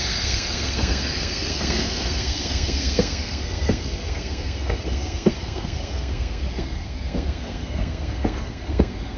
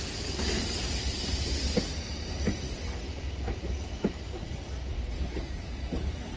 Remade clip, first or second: first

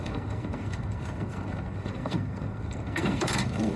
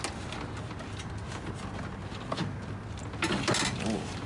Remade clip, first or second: first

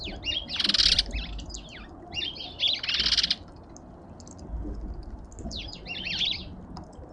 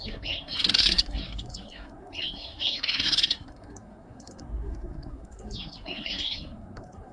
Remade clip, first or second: second